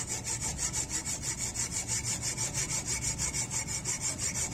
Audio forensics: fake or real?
real